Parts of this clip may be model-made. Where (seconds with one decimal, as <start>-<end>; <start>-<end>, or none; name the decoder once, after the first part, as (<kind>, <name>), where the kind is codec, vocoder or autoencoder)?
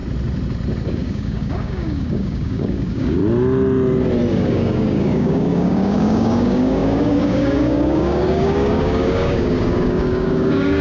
0.9-3.2 (codec, DAC); 4.3-10.8